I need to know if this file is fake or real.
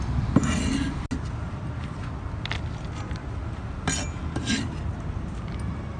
real